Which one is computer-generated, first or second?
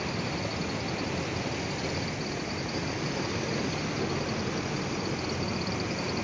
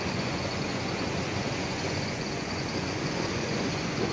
second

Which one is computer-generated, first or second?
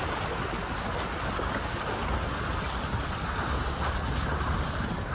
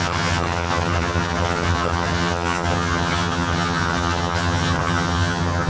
second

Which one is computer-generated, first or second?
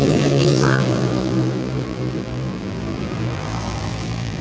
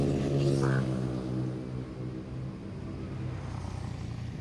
first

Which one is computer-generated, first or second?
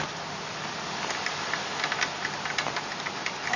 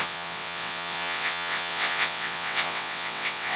second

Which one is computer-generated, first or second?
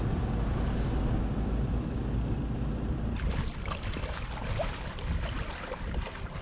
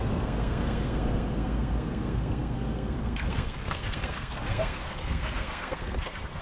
second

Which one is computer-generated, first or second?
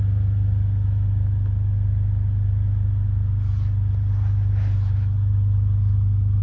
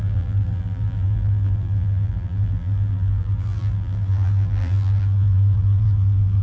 second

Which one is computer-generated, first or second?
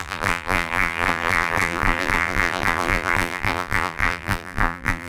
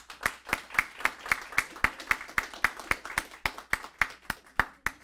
first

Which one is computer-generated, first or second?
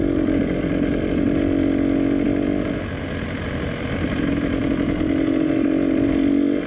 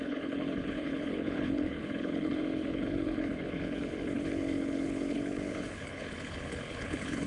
second